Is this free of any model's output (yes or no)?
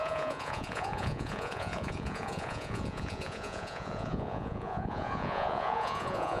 no